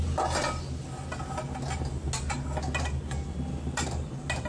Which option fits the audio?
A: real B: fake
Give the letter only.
A